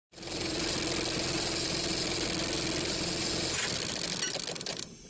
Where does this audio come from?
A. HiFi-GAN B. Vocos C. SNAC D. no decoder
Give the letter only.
D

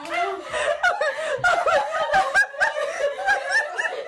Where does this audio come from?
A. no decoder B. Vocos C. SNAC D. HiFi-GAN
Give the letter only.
A